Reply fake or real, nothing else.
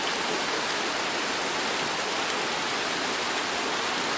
real